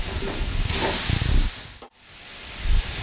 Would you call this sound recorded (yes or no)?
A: yes